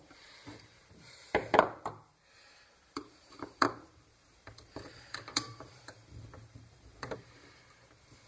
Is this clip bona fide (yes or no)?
no